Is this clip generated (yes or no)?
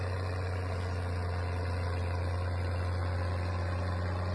no